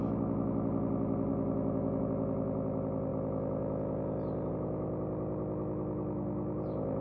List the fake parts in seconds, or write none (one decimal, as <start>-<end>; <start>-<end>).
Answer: 1.3-2.0